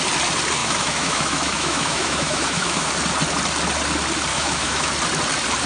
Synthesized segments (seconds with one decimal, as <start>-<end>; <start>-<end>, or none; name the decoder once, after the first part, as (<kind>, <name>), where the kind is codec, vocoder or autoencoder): 0.6-2.9 (autoencoder, DAC-VAE); 4.3-4.9